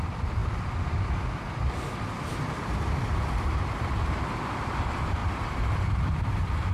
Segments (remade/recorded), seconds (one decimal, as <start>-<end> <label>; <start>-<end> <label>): 0.0-6.7 remade